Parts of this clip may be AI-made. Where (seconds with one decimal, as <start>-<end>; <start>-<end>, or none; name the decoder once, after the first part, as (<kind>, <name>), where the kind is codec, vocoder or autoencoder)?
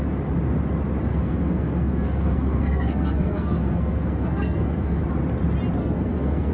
1.1-5.0 (codec, SNAC); 5.8-6.5